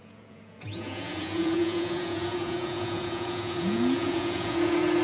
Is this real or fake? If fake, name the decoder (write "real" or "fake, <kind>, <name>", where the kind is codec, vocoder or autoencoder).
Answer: fake, vocoder, Vocos